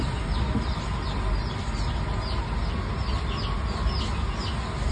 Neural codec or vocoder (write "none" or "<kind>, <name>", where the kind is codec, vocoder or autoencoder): none